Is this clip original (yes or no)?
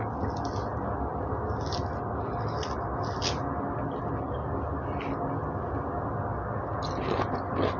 yes